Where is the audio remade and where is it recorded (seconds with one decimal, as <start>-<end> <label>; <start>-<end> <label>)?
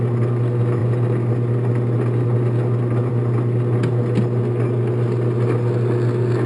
0.0-6.5 recorded